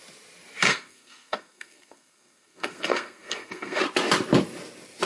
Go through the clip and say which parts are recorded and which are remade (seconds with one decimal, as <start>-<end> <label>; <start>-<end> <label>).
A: 0.0-0.7 recorded; 0.7-3.8 remade; 3.8-5.1 recorded